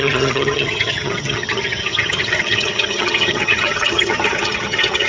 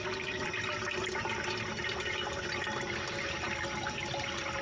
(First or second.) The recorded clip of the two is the second